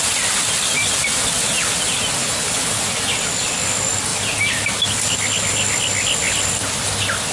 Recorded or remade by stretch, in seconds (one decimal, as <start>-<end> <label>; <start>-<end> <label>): 0.0-2.2 recorded; 2.2-2.8 remade; 2.8-7.3 recorded